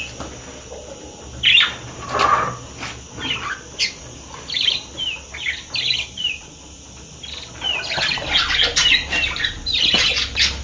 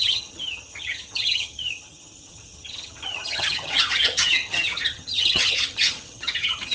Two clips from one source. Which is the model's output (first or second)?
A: second